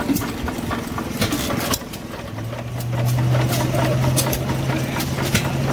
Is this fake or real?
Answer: real